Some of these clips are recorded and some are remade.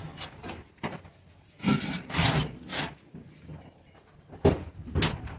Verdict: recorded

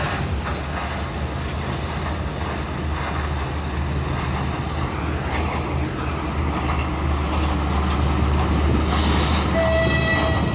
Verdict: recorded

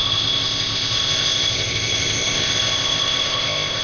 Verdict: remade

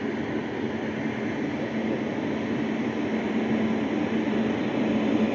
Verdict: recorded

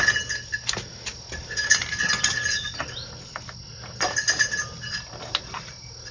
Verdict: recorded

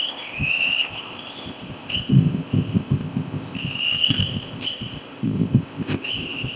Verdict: remade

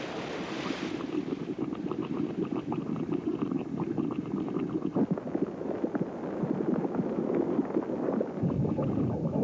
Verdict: recorded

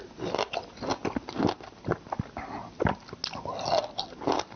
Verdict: recorded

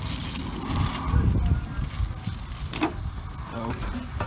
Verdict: recorded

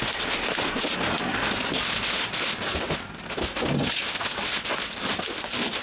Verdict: recorded